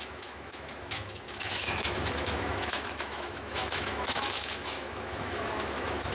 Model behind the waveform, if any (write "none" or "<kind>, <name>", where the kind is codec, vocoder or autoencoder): autoencoder, DAC-VAE